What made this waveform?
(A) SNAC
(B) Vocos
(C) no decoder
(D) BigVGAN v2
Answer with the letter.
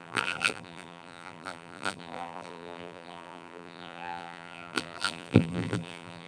D